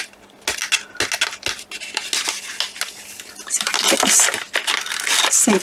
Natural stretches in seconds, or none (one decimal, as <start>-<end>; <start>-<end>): 0.0-5.6